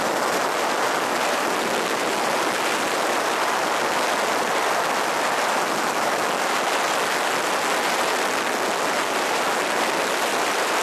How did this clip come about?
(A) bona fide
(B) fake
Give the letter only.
A